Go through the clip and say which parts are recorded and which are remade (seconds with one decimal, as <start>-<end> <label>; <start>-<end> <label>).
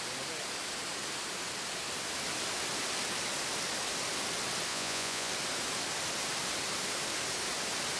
0.0-4.7 recorded; 4.7-5.3 remade; 5.3-8.0 recorded